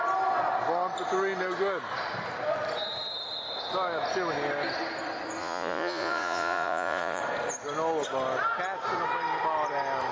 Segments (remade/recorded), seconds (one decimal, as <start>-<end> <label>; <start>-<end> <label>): 0.0-5.4 recorded; 5.4-7.2 remade; 7.2-10.1 recorded